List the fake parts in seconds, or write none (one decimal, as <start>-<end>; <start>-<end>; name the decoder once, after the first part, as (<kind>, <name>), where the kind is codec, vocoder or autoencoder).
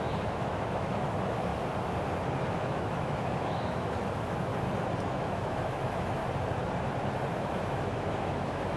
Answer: 0.0-1.5 (autoencoder, DAC-VAE); 2.4-4.5; 5.1-6.2; 7.3-8.8